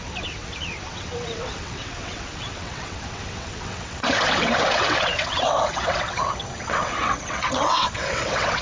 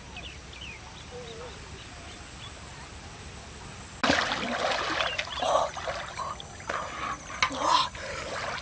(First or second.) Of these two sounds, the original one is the second